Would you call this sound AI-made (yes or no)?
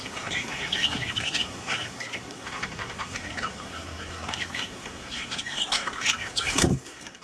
yes